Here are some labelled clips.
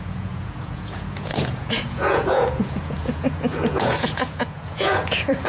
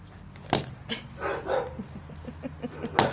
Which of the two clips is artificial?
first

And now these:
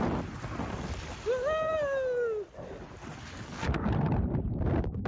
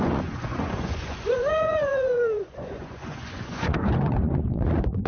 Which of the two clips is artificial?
second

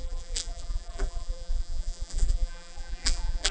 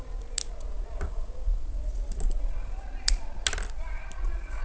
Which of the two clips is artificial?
first